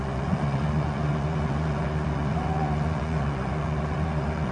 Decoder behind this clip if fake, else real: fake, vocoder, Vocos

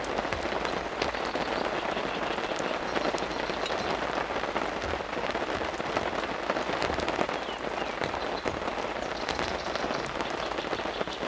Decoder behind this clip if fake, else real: real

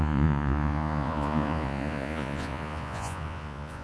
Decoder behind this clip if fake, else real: fake, vocoder, Vocos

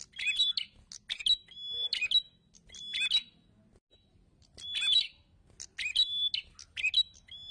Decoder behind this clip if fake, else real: real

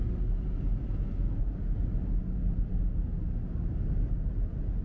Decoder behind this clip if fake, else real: real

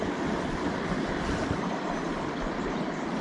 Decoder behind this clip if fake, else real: real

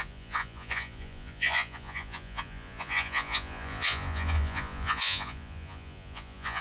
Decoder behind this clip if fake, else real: fake, vocoder, Vocos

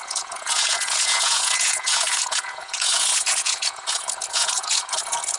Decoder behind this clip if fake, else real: fake, vocoder, Vocos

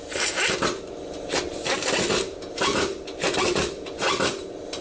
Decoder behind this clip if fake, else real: real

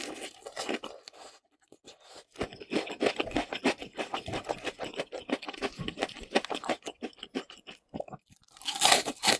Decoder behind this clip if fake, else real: real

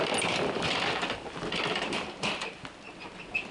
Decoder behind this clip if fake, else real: real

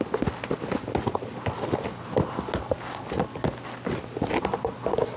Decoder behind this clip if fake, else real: real